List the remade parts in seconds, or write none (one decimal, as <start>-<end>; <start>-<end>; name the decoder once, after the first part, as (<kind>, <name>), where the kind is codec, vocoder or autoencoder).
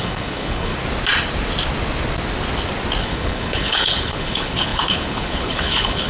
0.0-0.7 (codec, HILCodec); 3.0-6.1